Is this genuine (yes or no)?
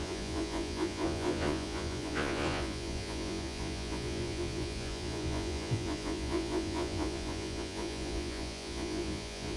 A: no